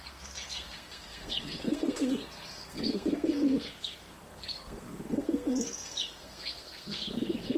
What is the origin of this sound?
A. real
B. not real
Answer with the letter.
B